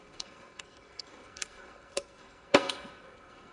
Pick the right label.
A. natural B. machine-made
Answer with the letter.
B